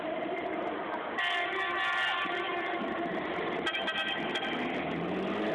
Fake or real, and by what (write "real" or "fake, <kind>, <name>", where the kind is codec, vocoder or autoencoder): real